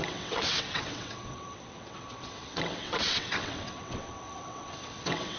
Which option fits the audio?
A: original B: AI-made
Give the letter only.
B